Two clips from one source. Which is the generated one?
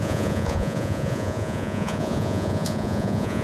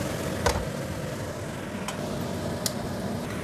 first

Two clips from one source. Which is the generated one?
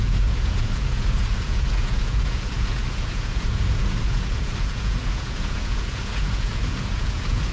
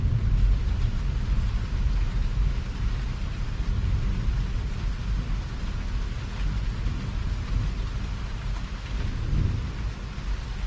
first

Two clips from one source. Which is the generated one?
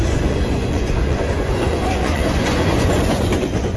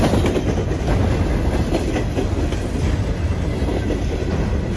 first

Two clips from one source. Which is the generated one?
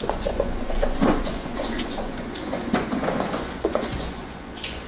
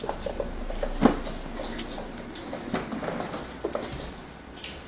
first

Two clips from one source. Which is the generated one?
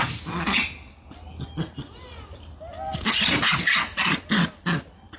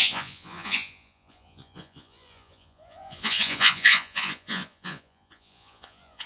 second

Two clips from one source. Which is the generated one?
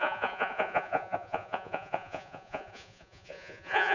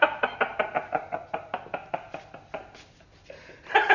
first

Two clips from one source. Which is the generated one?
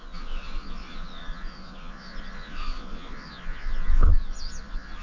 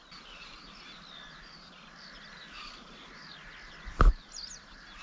first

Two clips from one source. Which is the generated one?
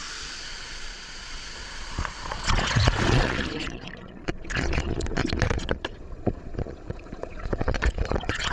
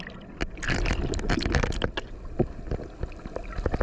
first